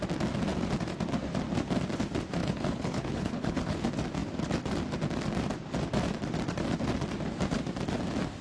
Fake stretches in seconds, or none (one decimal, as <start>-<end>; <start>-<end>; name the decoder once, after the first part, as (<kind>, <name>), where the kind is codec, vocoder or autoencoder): 2.4-3.8 (codec, HILCodec)